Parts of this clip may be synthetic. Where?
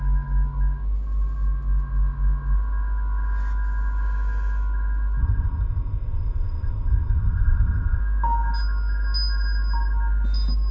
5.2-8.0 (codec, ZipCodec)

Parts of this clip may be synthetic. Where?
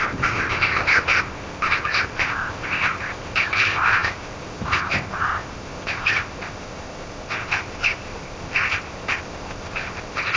0.0-10.4 (codec, ZipCodec)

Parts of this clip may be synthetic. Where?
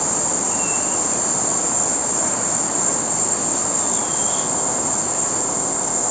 4.3-4.9 (codec, ZipCodec); 5.4-6.1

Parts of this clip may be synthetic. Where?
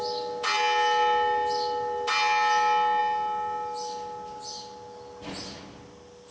none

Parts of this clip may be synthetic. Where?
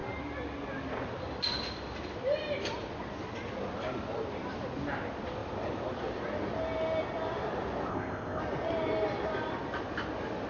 7.9-8.4 (codec, ZipCodec)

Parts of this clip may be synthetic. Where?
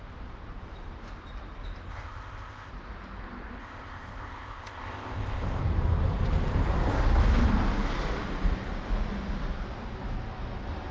1.9-2.7 (codec, ZipCodec); 3.6-5.6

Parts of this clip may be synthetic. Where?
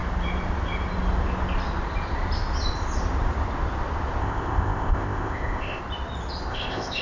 4.2-5.8 (codec, ZipCodec); 6.5-7.0